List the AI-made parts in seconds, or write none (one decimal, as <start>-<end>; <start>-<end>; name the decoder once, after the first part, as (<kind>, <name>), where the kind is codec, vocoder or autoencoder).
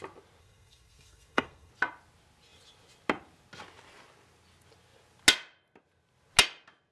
0.4-1.7 (codec, SNAC)